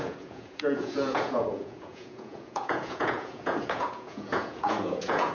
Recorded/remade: remade